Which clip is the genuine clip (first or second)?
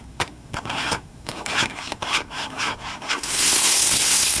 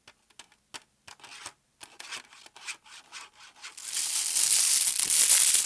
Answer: second